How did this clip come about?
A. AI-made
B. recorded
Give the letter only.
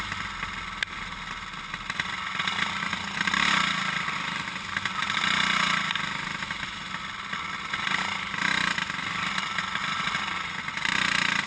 B